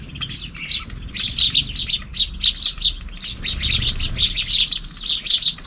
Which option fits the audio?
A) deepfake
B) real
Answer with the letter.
B